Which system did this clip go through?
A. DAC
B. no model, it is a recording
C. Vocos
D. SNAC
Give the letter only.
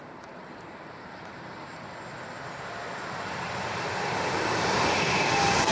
B